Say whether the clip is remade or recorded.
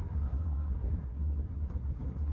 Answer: remade